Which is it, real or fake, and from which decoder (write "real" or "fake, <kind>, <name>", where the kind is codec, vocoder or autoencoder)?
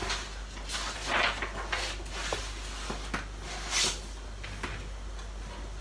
real